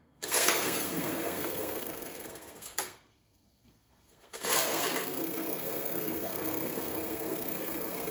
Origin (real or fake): fake